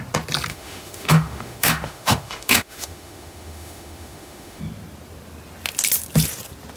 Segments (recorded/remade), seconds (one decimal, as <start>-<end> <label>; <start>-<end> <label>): 0.0-0.5 recorded; 0.5-4.6 remade; 4.6-6.8 recorded